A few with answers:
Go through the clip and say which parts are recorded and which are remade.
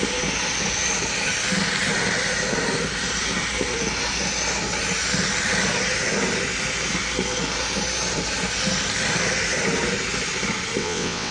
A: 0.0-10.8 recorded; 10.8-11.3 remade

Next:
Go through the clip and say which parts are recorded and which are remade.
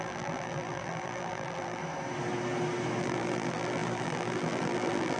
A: 0.0-1.8 remade; 1.8-3.0 recorded; 3.0-5.2 remade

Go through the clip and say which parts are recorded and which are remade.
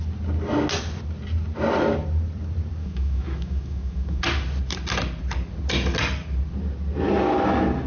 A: 0.0-2.8 recorded; 2.8-4.2 remade; 4.2-7.9 recorded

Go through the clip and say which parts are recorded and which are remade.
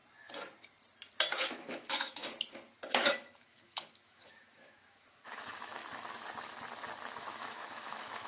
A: 0.0-1.4 recorded; 1.4-2.2 remade; 2.2-2.9 recorded; 2.9-5.8 remade; 5.8-7.2 recorded; 7.2-8.3 remade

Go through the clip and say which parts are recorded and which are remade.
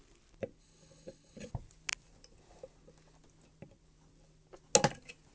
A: 0.0-0.6 recorded; 0.6-1.5 remade; 1.5-5.3 recorded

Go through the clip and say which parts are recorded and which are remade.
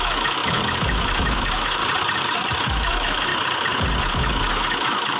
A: 0.0-1.8 remade; 1.8-2.6 recorded; 2.6-3.3 remade; 3.3-4.0 recorded; 4.0-5.2 remade